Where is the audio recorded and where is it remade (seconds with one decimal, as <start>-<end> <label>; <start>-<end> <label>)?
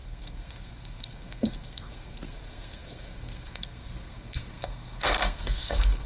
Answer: 0.0-6.1 remade